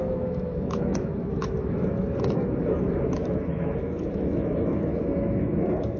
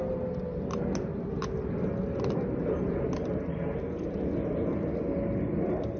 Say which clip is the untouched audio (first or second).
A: second